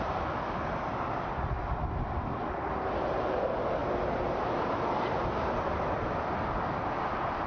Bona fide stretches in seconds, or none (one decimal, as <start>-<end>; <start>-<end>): 0.0-7.5